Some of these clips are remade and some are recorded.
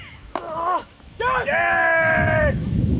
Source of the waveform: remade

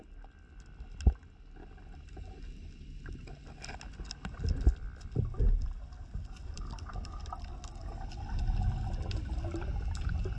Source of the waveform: recorded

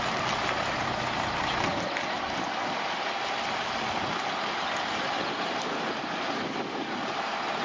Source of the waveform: recorded